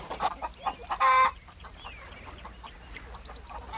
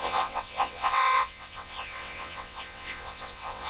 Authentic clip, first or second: first